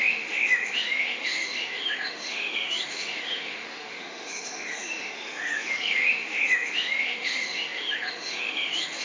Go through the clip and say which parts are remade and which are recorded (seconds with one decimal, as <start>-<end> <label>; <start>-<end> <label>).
0.0-9.0 remade